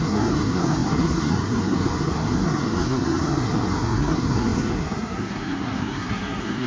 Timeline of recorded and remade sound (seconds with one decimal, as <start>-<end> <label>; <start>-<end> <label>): 0.0-6.7 remade